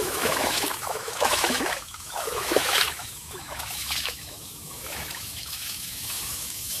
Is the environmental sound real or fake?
fake